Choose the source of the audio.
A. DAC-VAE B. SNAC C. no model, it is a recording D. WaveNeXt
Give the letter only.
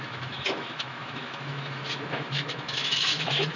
A